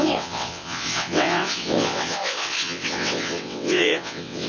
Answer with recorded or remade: remade